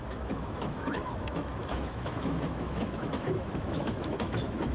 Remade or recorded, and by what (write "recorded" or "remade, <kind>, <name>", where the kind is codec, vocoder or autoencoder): remade, autoencoder, DAC-VAE